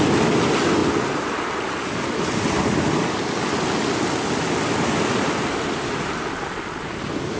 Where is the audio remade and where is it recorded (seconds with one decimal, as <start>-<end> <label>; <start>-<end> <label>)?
0.0-7.4 recorded